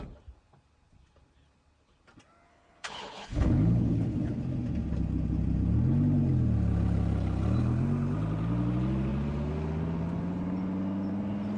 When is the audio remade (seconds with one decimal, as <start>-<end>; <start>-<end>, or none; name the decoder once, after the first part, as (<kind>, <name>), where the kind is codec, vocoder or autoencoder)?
2.5-4.4 (codec, HILCodec)